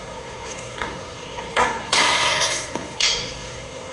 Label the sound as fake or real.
fake